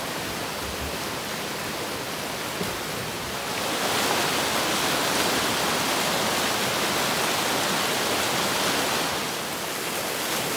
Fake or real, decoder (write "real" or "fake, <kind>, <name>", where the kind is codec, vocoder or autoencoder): real